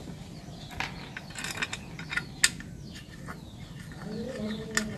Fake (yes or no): no